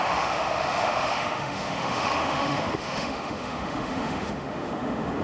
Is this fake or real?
fake